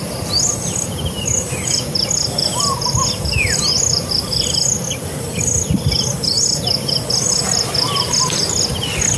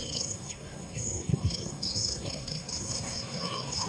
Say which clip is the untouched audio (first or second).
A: first